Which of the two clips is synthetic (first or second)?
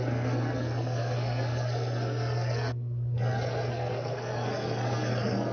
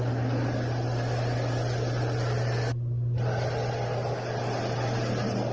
first